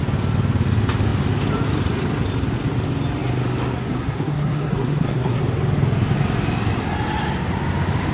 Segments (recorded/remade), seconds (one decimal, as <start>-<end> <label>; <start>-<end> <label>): 0.0-3.9 recorded; 3.9-5.4 remade; 5.4-8.1 recorded